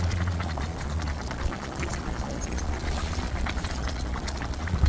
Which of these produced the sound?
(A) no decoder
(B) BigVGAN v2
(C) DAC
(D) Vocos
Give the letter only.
D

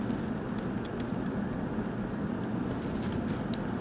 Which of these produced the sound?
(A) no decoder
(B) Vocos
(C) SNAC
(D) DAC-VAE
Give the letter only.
A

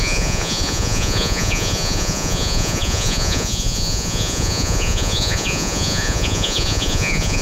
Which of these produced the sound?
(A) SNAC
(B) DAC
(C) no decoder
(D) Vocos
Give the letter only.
D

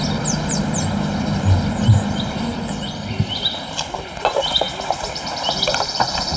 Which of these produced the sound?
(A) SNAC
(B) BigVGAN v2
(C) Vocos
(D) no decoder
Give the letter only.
D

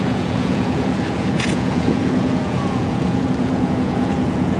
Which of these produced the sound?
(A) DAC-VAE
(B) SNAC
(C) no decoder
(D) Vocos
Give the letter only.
D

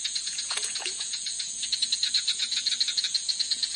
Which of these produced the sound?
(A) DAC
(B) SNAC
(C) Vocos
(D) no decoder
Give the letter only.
C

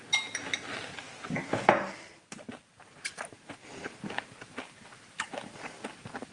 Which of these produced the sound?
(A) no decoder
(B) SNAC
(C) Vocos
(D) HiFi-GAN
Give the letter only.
A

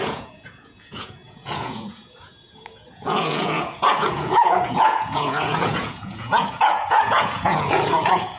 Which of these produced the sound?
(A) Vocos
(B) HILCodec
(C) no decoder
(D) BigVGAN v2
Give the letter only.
A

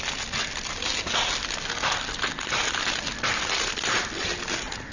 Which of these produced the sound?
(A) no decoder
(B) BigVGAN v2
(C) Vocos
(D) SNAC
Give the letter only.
A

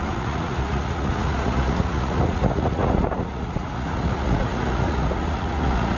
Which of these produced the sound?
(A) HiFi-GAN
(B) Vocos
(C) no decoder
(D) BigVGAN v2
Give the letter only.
B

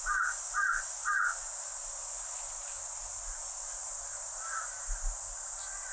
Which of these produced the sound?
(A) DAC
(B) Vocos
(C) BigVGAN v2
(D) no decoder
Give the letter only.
D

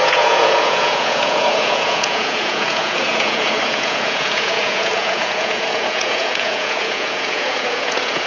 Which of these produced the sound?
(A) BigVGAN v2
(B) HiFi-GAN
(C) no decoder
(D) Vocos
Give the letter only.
D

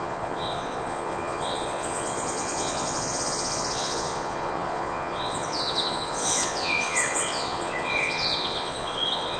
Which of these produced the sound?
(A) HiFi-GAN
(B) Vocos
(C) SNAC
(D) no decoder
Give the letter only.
B